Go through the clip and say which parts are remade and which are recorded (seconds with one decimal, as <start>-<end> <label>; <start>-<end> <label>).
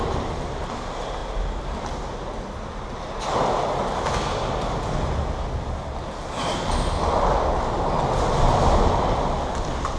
0.0-10.0 recorded